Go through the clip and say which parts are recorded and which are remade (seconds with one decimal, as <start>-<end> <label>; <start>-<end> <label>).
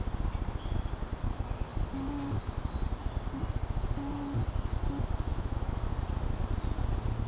0.0-5.3 recorded; 5.3-5.9 remade; 5.9-7.3 recorded